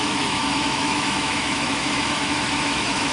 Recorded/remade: remade